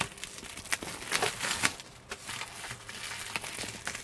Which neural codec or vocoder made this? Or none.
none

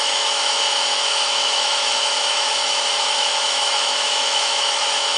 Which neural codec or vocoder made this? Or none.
autoencoder, DAC-VAE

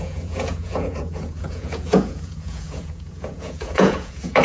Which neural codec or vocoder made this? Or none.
vocoder, Vocos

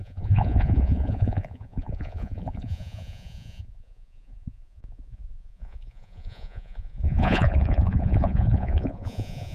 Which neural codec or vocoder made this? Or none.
vocoder, Vocos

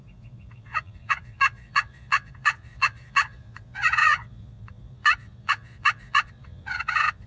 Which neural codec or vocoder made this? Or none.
vocoder, Vocos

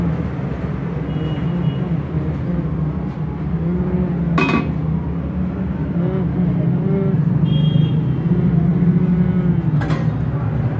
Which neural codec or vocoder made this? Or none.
none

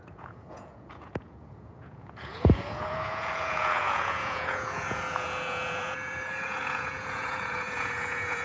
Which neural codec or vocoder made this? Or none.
vocoder, Vocos